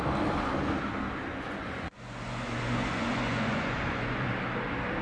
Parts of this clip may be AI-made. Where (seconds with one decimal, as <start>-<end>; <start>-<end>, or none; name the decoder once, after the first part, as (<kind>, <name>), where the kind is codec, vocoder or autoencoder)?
1.3-4.3 (vocoder, Vocos)